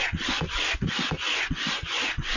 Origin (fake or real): real